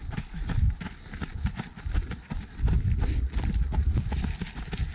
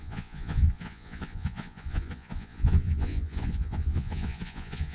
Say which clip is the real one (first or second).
first